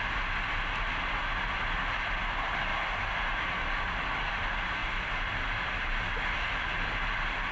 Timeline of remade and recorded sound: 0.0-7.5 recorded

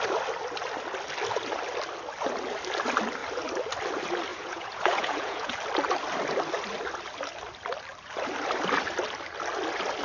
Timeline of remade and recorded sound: 0.0-4.3 recorded; 4.3-5.5 remade; 5.5-10.0 recorded